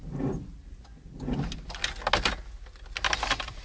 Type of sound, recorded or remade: recorded